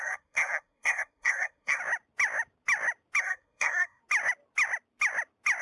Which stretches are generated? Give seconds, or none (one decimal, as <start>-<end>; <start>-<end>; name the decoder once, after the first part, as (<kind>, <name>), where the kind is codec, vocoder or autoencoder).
0.0-1.8 (codec, SNAC); 3.2-4.0